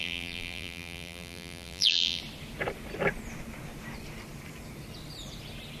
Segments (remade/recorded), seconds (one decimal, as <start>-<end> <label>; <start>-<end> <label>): 0.0-2.2 remade; 2.2-5.8 recorded